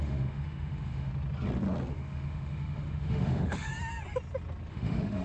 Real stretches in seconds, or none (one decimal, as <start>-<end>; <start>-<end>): 1.1-1.9; 3.7-4.7